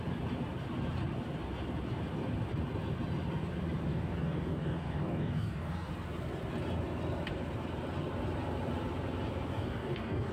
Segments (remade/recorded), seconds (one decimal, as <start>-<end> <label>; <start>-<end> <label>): 0.0-3.9 recorded; 3.9-5.9 remade; 5.9-9.5 recorded; 9.5-10.3 remade